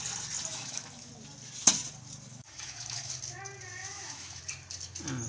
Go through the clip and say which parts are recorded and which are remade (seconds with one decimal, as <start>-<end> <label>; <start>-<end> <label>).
0.0-0.5 recorded; 0.5-1.1 remade; 1.1-2.3 recorded; 2.3-3.1 remade; 3.1-3.8 recorded; 3.8-4.4 remade; 4.4-5.3 recorded